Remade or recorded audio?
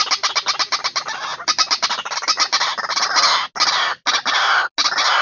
recorded